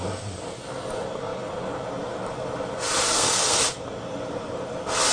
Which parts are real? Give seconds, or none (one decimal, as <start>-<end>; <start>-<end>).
0.0-3.1; 3.6-5.1